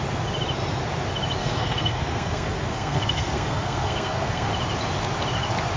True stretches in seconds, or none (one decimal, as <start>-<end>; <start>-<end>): 0.0-1.4; 4.5-5.8